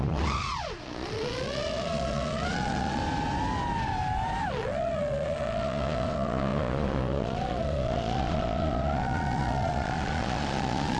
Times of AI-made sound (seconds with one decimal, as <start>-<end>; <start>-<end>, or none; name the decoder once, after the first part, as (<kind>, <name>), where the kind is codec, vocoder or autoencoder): 0.0-3.0 (vocoder, Vocos); 4.5-11.0